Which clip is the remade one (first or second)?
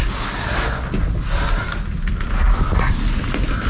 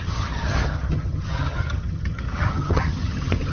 second